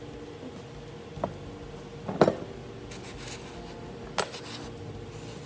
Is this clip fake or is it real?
real